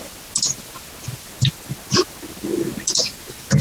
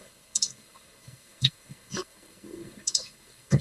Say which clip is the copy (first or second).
second